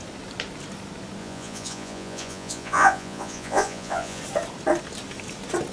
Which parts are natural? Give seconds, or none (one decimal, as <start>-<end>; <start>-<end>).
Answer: 0.0-1.2; 4.2-5.7